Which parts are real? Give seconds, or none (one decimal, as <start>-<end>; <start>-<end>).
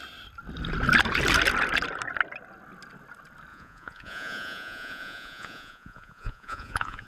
0.0-3.5